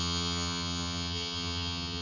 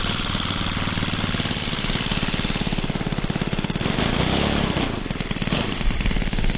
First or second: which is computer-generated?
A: first